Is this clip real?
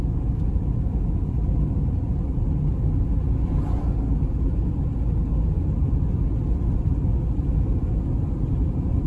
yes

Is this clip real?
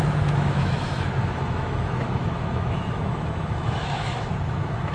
no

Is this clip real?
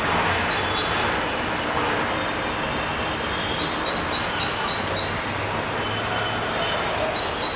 yes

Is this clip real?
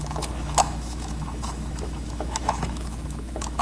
no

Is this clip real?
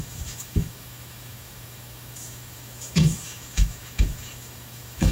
no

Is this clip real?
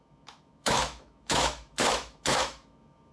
no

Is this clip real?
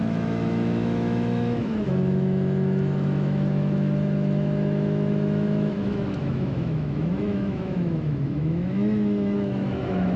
no